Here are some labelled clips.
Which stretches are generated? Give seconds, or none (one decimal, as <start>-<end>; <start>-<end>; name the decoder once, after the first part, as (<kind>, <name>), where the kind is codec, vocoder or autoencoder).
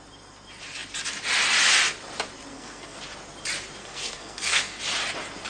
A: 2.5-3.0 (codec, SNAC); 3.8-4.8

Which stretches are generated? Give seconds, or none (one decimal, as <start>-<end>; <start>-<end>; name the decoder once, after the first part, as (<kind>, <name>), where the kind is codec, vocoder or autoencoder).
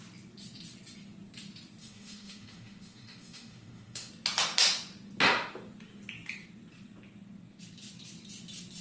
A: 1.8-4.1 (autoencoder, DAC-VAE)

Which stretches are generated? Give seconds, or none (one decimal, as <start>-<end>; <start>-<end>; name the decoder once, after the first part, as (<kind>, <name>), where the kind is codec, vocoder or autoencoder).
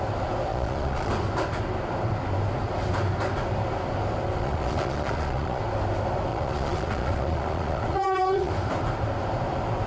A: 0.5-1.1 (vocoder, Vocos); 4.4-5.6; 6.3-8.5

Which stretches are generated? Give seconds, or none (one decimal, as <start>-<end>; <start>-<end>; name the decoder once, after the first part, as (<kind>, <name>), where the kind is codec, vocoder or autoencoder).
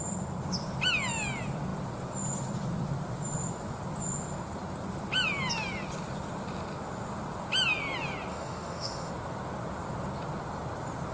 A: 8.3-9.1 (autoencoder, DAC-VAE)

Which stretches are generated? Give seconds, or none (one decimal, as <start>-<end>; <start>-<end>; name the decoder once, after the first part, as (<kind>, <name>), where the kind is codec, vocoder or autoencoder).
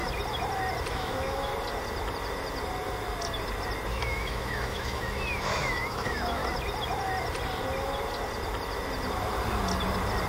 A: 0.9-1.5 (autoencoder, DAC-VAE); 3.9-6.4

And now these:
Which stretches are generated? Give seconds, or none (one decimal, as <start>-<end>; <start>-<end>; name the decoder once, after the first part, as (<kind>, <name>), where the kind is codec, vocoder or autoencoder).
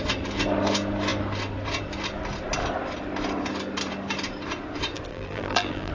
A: 5.1-5.9 (vocoder, BigVGAN v2)